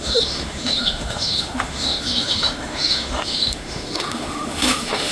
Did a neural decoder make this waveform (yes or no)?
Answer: yes